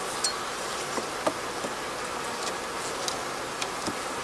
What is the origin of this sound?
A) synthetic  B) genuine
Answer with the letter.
B